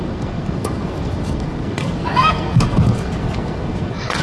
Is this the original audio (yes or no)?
no